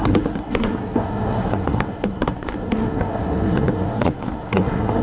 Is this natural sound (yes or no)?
no